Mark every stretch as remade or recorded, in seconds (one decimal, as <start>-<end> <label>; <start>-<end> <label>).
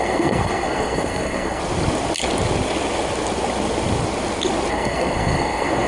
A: 0.0-1.6 remade; 1.6-4.7 recorded; 4.7-5.9 remade